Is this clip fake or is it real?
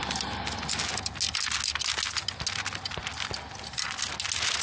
real